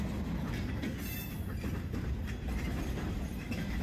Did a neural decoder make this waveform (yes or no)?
no